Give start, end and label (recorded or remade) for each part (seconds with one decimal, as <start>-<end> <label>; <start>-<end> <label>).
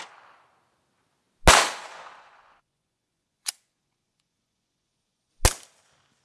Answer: 0.0-1.6 recorded; 1.6-5.3 remade; 5.3-6.2 recorded